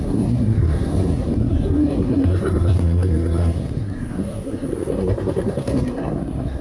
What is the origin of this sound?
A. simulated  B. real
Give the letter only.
A